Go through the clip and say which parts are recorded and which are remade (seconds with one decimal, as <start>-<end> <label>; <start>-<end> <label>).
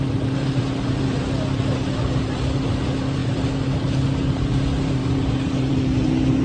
0.0-6.4 recorded